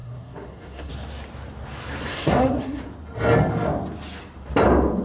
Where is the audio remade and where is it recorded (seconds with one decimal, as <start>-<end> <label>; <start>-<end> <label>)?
0.0-0.9 remade; 0.9-2.0 recorded; 2.0-2.8 remade; 2.8-5.0 recorded